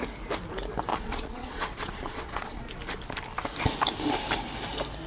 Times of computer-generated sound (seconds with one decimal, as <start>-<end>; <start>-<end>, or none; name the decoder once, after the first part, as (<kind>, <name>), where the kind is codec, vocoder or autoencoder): 0.9-2.6 (vocoder, Vocos)